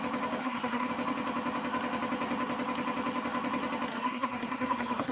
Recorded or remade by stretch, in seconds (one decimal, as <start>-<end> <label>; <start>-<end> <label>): 0.0-0.4 recorded; 0.4-0.9 remade; 0.9-3.9 recorded; 3.9-5.1 remade